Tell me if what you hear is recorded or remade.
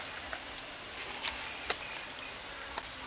recorded